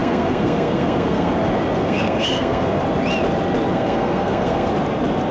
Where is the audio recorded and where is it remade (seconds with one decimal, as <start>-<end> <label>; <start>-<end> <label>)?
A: 0.0-1.3 remade; 1.3-1.8 recorded; 1.8-2.8 remade; 2.8-3.7 recorded; 3.7-4.7 remade; 4.7-5.3 recorded